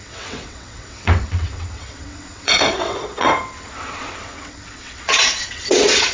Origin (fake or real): fake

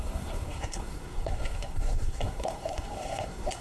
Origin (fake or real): fake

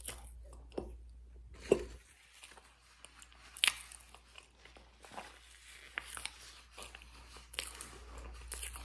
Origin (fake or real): real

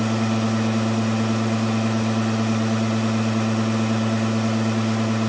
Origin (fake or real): real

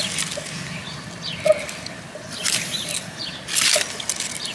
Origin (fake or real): real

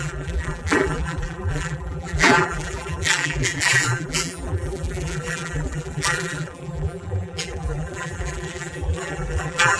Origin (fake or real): fake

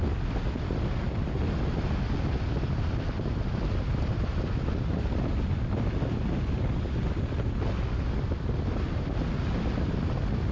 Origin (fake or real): real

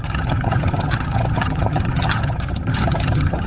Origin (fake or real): fake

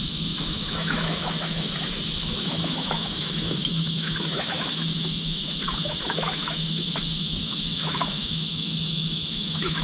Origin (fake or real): fake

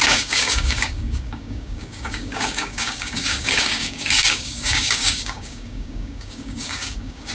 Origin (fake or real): fake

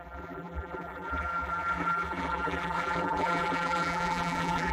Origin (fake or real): fake